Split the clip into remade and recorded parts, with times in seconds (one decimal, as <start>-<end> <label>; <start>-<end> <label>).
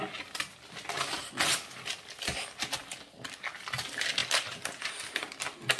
0.0-5.8 recorded